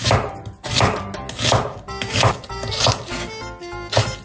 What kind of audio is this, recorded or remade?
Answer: recorded